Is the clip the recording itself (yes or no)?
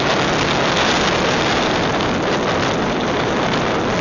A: yes